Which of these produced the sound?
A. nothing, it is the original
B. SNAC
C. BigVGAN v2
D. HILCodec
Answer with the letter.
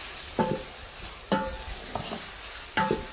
A